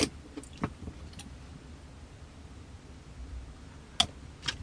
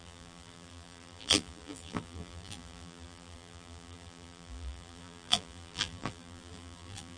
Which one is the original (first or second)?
first